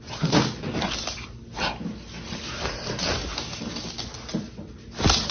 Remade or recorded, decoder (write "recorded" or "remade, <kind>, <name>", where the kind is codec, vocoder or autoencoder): recorded